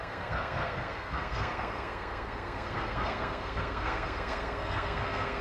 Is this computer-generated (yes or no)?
yes